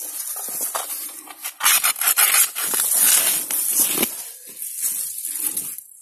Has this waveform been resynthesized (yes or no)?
no